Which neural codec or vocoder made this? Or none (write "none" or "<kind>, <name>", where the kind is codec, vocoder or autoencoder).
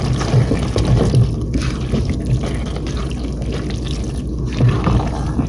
none